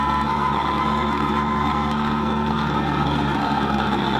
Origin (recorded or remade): remade